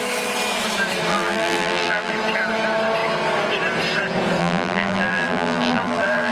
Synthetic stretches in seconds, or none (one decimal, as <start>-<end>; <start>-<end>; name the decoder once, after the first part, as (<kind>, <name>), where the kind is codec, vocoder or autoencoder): 1.1-2.1 (vocoder, BigVGAN v2); 4.4-6.3